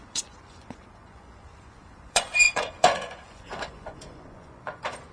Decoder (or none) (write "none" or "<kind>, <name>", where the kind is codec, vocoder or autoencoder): vocoder, Vocos